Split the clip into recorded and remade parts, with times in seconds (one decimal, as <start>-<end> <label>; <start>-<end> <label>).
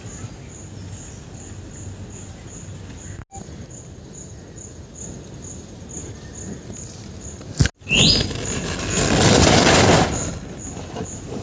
0.0-11.4 recorded